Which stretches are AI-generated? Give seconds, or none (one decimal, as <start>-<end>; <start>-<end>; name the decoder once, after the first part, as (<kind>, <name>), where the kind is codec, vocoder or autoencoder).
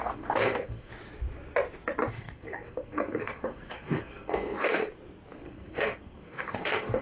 0.0-0.9 (codec, SNAC); 2.1-4.8; 5.3-7.0